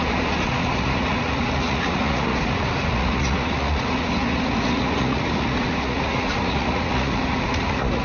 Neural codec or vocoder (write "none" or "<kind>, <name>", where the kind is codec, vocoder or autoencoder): vocoder, Vocos